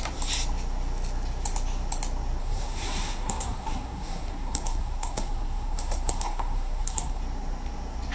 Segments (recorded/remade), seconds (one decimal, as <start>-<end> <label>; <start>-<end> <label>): 0.0-2.4 recorded; 2.4-7.2 remade; 7.2-8.1 recorded